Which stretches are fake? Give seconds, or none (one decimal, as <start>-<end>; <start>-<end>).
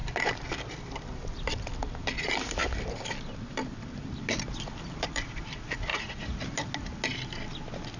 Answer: 5.9-6.4